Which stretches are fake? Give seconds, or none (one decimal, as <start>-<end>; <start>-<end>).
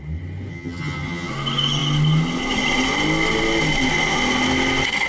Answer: 0.5-1.3